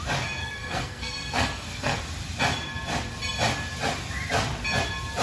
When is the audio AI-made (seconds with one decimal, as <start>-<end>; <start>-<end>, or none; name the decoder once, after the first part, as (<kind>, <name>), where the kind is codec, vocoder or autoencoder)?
0.4-2.0 (codec, SNAC)